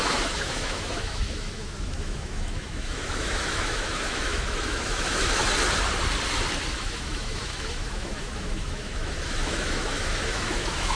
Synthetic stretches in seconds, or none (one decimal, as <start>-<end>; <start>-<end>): 0.0-5.4; 6.7-11.0